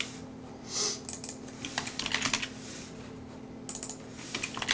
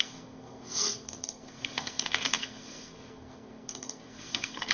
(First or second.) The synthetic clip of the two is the second